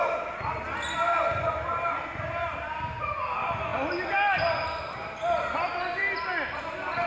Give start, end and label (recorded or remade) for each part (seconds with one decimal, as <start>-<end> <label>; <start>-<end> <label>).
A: 0.0-3.7 recorded; 3.7-4.4 remade; 4.4-6.0 recorded; 6.0-6.6 remade; 6.6-7.1 recorded